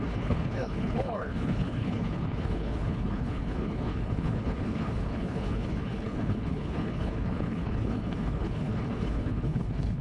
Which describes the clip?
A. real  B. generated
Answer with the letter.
B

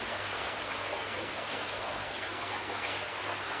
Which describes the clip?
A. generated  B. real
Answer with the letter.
A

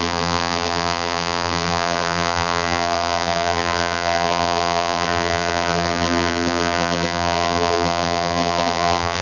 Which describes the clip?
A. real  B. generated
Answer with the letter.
B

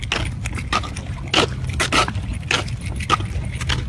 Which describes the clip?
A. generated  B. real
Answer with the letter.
B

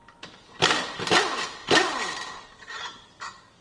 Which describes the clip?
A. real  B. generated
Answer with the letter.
A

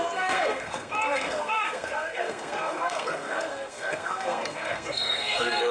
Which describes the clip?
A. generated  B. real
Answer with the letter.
A